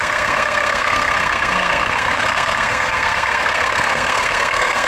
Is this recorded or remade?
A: remade